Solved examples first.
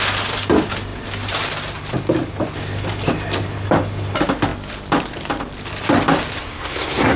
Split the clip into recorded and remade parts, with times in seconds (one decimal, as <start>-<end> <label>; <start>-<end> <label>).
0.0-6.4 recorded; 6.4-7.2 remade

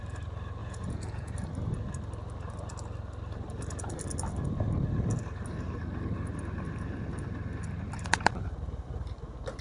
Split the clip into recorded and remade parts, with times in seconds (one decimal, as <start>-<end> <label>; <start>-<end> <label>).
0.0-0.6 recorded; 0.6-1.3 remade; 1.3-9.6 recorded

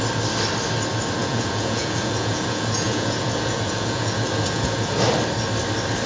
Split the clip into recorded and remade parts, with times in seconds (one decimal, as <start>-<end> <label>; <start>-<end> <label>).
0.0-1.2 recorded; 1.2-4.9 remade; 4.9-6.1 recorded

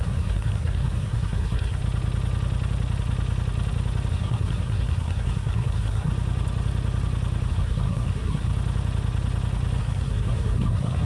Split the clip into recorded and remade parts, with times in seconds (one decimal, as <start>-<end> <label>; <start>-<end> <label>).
0.0-1.8 remade; 1.8-4.1 recorded; 4.1-6.1 remade; 6.1-7.5 recorded; 7.5-8.5 remade; 8.5-9.8 recorded; 9.8-11.1 remade

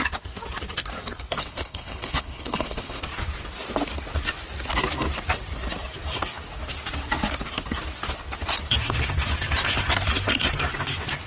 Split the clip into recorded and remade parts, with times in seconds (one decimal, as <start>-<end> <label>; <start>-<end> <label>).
0.0-1.4 recorded; 1.4-3.0 remade; 3.0-11.3 recorded

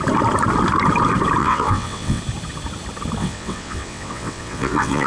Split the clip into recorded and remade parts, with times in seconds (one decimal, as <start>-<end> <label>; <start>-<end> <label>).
0.0-1.4 recorded; 1.4-2.2 remade; 2.2-3.2 recorded; 3.2-5.1 remade

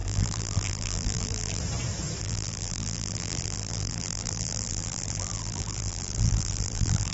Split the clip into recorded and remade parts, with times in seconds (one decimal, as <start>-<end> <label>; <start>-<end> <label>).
0.0-1.6 remade; 1.6-2.2 recorded; 2.2-7.1 remade